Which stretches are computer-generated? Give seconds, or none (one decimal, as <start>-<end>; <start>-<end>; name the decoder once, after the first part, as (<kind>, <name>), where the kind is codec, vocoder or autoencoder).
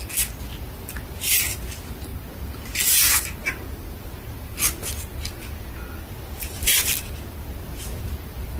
none